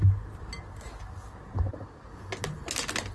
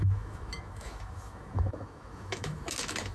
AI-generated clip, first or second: second